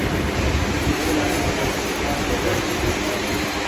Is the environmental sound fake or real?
real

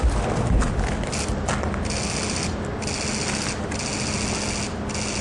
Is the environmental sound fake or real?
real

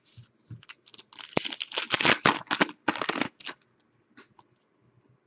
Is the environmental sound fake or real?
real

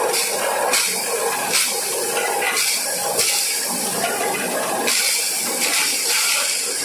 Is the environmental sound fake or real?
real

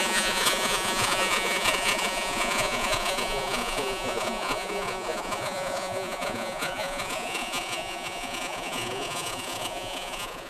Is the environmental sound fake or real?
fake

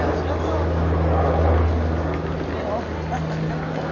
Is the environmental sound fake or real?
real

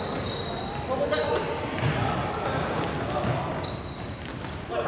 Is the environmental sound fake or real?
real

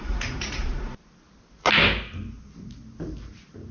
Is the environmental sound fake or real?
real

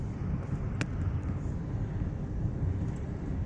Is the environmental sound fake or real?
real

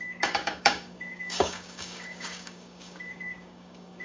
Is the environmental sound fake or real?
fake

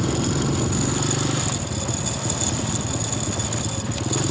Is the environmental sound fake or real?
real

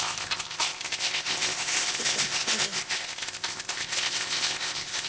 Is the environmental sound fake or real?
fake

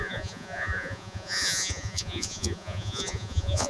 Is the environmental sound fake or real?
fake